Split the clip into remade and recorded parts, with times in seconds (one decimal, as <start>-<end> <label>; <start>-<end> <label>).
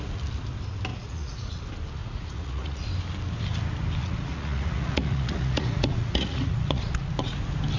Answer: 0.0-0.9 recorded; 0.9-1.6 remade; 1.6-2.0 recorded; 2.0-2.9 remade; 2.9-4.0 recorded; 4.0-7.1 remade; 7.1-7.8 recorded